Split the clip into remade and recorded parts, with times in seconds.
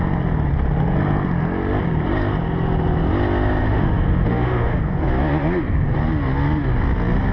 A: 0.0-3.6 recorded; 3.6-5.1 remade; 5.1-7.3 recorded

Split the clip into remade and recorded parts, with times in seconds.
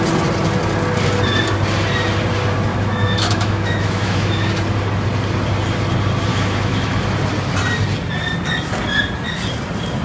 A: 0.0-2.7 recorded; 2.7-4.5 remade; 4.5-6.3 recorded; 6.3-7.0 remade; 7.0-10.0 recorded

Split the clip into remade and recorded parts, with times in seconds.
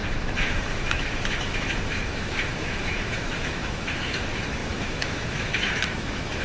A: 0.0-6.4 remade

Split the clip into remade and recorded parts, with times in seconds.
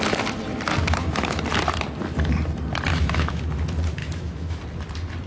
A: 0.0-0.8 recorded; 0.8-1.4 remade; 1.4-2.9 recorded; 2.9-3.4 remade; 3.4-4.0 recorded; 4.0-4.6 remade; 4.6-5.3 recorded